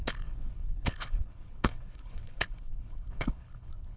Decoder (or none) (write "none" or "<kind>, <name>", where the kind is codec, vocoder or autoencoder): codec, HILCodec